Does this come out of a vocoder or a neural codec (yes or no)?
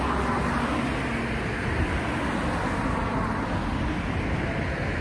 no